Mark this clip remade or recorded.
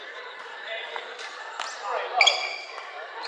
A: recorded